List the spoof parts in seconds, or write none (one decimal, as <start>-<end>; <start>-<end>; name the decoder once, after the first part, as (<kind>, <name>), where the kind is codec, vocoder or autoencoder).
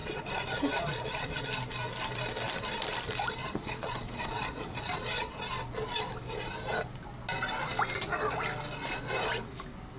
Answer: 0.0-1.4 (vocoder, Vocos); 3.4-5.4